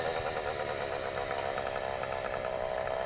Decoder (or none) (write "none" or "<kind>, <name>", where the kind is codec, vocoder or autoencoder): none